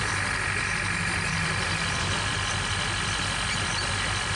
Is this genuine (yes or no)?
yes